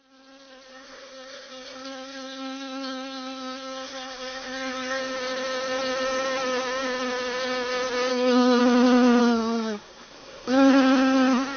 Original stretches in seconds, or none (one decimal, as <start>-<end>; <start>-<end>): 0.0-0.7; 5.0-8.1; 8.6-9.2; 10.7-11.6